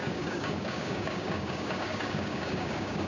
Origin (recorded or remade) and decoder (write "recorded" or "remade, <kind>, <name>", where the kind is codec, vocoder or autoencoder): remade, codec, DAC